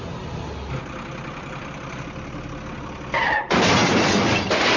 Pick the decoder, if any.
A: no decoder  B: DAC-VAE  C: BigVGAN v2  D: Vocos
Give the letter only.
A